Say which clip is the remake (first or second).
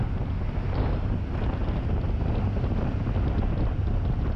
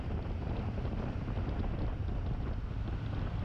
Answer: second